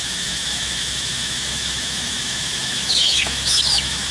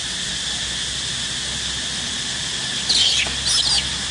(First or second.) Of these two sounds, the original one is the second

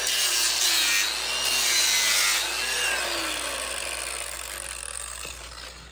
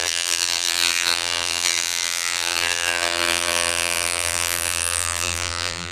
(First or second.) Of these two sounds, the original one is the first